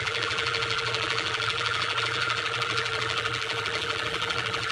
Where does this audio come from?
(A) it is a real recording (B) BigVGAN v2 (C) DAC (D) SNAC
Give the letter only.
B